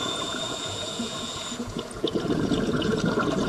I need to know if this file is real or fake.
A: fake